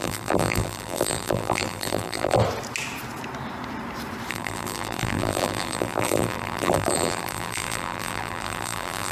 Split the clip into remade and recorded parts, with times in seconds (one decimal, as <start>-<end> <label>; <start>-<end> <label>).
0.0-2.4 remade; 2.4-4.3 recorded; 4.3-9.1 remade